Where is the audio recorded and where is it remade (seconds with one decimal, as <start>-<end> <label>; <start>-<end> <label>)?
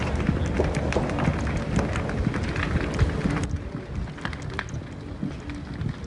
0.0-6.1 recorded